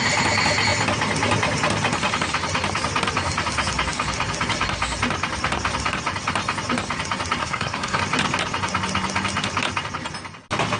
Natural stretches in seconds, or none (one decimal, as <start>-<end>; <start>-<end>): 0.0-7.4; 8.0-10.8